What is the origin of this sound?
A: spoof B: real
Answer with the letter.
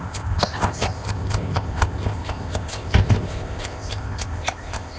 A